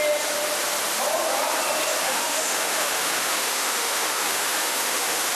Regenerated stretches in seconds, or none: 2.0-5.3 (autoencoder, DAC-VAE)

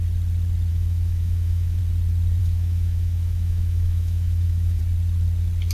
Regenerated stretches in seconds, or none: 0.7-1.8 (autoencoder, DAC-VAE); 2.4-4.8

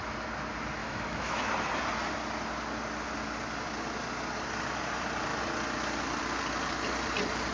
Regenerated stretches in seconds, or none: 0.8-1.5 (autoencoder, DAC-VAE)

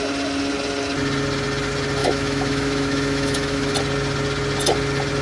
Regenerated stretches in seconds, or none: 2.0-3.7 (autoencoder, DAC-VAE)

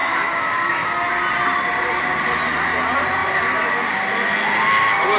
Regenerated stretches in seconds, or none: 0.0-1.1 (autoencoder, DAC-VAE)

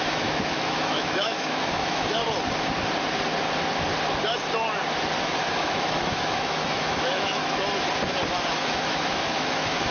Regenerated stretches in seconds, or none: 0.0-2.2 (autoencoder, DAC-VAE); 5.2-7.4; 8.5-9.9